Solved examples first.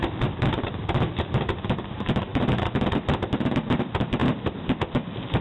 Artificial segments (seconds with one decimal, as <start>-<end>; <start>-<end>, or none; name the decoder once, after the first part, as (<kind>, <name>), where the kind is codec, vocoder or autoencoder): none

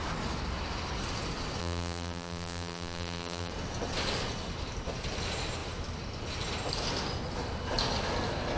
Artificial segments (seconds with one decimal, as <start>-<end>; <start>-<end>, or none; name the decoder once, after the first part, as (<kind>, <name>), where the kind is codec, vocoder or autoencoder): 1.6-3.5 (vocoder, BigVGAN v2)

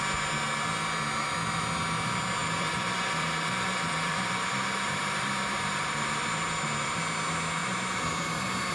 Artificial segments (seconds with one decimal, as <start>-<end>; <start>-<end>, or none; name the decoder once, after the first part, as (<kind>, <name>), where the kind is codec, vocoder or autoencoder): 2.4-7.0 (vocoder, BigVGAN v2); 7.6-8.7